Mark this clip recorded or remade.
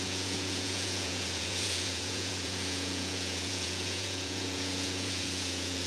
remade